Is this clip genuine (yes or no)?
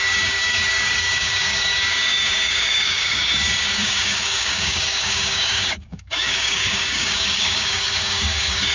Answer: no